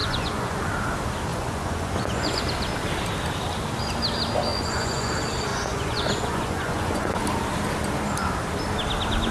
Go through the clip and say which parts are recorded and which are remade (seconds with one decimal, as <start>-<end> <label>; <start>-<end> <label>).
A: 0.0-0.6 remade; 0.6-1.3 recorded; 1.3-2.4 remade; 2.4-4.5 recorded; 4.5-5.1 remade; 5.1-5.5 recorded; 5.5-7.2 remade; 7.2-9.3 recorded